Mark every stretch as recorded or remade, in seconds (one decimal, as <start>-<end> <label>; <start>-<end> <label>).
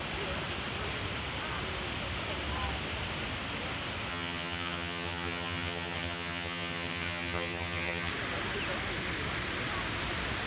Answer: 0.0-4.1 recorded; 4.1-8.1 remade; 8.1-10.5 recorded